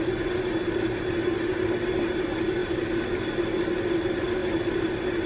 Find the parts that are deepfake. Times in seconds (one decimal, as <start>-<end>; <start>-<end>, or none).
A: none